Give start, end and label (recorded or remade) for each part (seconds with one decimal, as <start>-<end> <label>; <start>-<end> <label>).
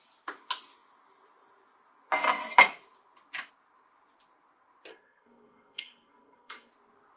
0.0-4.9 recorded; 4.9-6.7 remade; 6.7-7.2 recorded